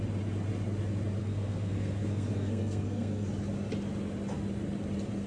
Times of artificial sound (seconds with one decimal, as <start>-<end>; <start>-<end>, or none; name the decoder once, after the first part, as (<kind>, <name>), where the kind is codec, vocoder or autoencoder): 1.2-3.3 (codec, SNAC)